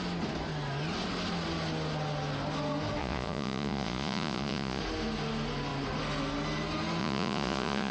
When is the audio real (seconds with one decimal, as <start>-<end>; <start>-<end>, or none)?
0.0-3.0; 4.8-7.0